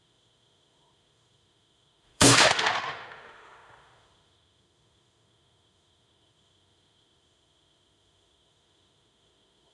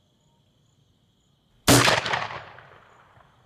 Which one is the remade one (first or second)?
first